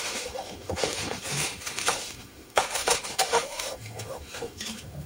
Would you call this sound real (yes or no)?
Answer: no